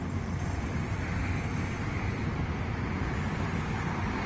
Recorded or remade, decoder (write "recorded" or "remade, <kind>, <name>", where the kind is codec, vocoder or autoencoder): recorded